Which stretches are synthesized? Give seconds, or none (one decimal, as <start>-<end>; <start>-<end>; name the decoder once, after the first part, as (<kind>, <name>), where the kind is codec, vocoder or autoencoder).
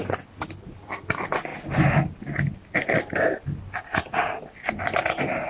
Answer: none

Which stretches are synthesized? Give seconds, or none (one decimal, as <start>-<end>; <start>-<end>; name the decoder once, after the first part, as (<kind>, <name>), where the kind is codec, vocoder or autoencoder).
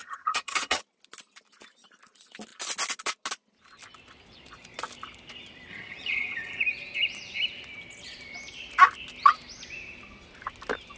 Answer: 0.0-0.8 (vocoder, HiFi-GAN); 5.7-6.6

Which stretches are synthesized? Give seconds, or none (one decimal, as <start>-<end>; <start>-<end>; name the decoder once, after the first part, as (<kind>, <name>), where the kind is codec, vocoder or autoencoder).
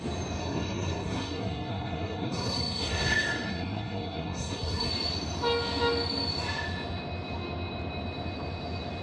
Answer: 0.4-4.9 (codec, SNAC)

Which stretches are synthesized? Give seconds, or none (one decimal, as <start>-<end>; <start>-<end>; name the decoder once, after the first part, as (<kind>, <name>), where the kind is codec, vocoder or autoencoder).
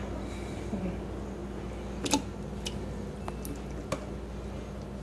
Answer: none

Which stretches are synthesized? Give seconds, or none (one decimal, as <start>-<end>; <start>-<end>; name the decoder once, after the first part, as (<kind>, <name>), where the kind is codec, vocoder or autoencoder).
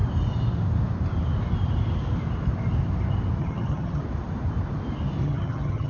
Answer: 3.4-4.0 (vocoder, HiFi-GAN); 5.2-5.9